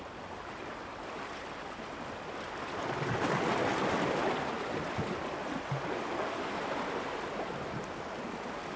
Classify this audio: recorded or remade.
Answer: recorded